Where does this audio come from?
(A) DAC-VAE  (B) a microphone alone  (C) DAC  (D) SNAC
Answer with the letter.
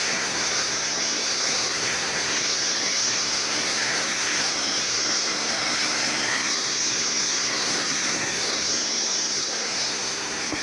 D